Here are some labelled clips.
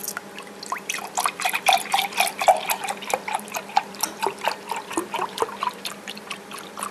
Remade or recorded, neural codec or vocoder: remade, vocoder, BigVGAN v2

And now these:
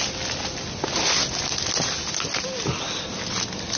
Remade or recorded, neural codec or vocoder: recorded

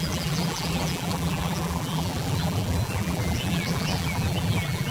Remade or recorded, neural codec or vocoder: remade, vocoder, BigVGAN v2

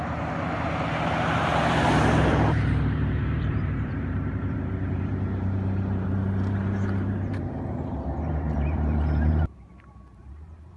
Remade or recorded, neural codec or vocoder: remade, vocoder, BigVGAN v2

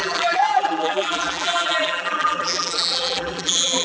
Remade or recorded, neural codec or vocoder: remade, vocoder, BigVGAN v2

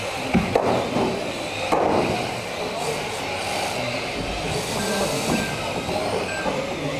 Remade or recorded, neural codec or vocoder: recorded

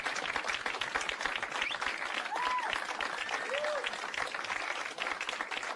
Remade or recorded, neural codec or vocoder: recorded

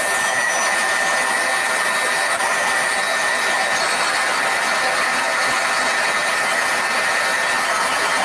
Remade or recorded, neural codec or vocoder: recorded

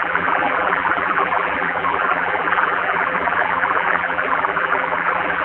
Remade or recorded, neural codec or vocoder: remade, vocoder, BigVGAN v2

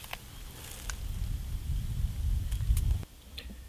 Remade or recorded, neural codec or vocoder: recorded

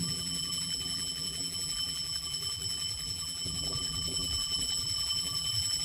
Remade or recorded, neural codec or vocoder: remade, vocoder, BigVGAN v2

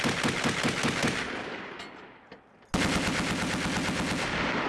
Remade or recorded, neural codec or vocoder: recorded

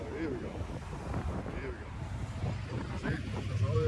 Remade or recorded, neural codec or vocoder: remade, vocoder, BigVGAN v2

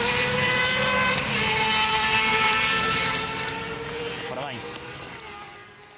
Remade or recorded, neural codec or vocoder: remade, vocoder, BigVGAN v2